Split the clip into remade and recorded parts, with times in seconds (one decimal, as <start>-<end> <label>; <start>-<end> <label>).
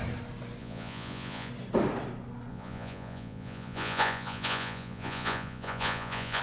0.0-0.6 recorded; 0.6-1.5 remade; 1.5-2.5 recorded; 2.5-6.4 remade